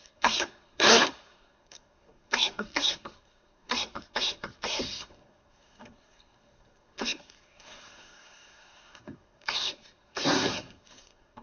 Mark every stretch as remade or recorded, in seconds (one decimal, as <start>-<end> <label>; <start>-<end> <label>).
0.0-11.4 remade